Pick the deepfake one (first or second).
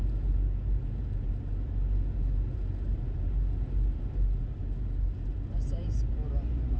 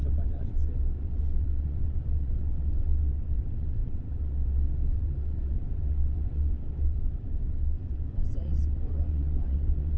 second